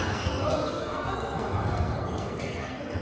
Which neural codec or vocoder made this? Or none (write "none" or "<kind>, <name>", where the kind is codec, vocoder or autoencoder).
codec, SNAC